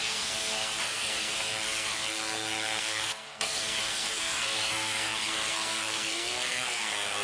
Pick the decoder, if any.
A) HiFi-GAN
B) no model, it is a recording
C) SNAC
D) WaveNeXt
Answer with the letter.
C